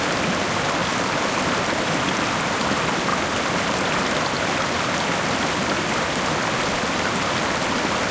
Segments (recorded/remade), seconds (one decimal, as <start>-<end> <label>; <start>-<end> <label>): 0.0-8.1 recorded